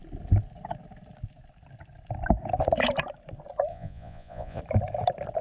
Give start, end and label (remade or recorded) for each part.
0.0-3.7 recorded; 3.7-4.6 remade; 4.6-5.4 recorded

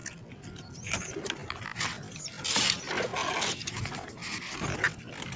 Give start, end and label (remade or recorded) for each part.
0.0-5.4 recorded